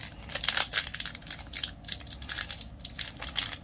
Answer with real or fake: real